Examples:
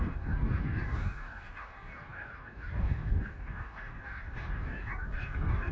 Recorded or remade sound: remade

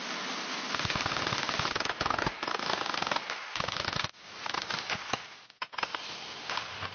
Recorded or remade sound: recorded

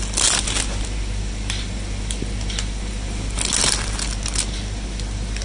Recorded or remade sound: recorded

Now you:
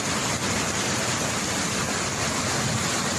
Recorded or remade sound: remade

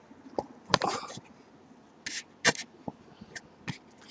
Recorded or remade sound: recorded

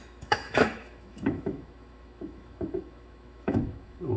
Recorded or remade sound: remade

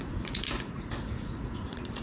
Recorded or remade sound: remade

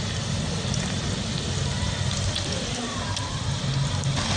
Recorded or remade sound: recorded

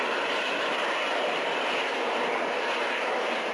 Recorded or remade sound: recorded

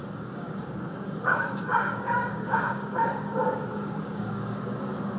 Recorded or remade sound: remade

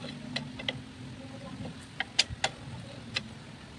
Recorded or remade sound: recorded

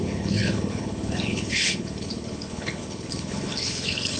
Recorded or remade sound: remade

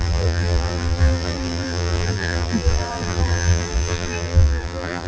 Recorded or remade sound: remade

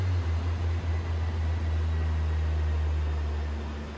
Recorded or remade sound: recorded